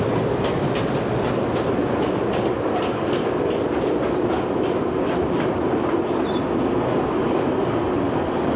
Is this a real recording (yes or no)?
yes